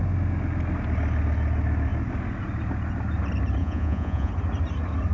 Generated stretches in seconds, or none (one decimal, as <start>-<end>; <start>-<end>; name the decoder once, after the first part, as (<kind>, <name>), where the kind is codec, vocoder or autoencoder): 3.6-4.3 (vocoder, Vocos)